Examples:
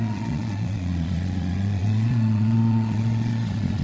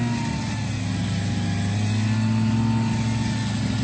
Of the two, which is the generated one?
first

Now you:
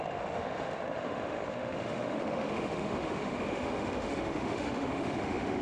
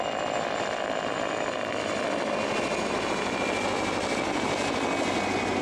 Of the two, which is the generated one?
first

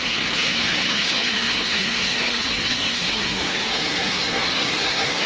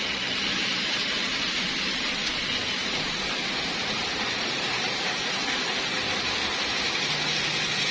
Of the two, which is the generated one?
first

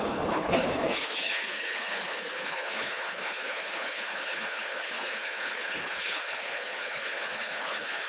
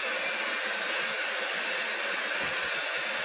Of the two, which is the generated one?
first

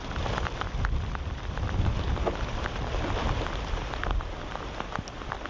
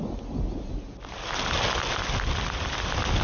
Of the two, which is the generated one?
first